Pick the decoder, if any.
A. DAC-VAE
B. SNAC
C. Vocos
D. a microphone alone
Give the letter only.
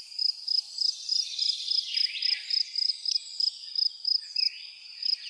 D